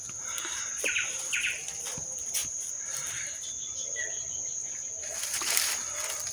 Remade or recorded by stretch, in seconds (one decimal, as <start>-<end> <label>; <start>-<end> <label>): 0.0-6.3 recorded